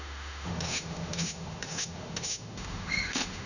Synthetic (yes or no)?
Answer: yes